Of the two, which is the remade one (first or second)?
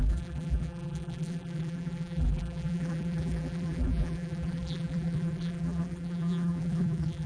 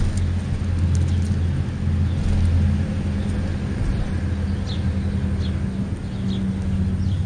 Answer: first